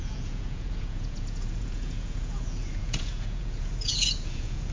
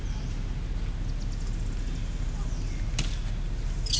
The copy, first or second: first